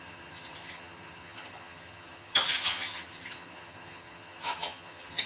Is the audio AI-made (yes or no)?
yes